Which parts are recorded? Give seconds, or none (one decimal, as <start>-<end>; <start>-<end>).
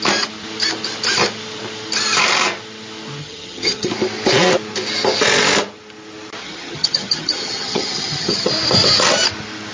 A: 0.0-3.2; 3.9-6.4; 8.5-9.7